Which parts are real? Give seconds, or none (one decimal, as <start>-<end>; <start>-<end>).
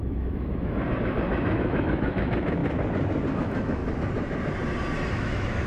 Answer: 2.6-3.3; 3.8-5.1